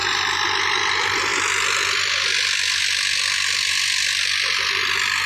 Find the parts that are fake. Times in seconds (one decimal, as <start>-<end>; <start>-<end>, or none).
none